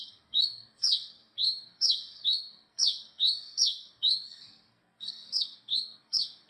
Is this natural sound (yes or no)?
no